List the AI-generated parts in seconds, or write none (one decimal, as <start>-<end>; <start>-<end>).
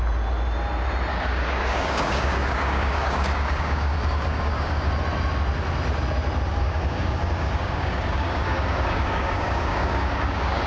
1.1-4.9; 6.5-10.7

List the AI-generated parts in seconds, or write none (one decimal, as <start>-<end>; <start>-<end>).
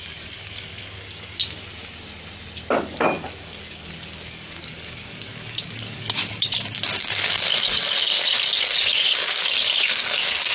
0.0-1.4; 2.8-10.5